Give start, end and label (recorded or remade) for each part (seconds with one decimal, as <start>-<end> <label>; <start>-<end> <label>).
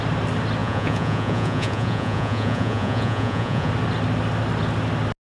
0.0-0.6 recorded; 0.6-3.7 remade; 3.7-5.2 recorded